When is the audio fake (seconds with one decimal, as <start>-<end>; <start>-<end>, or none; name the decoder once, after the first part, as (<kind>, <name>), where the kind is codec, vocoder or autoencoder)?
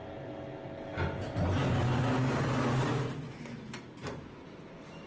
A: 4.0-5.1 (vocoder, BigVGAN v2)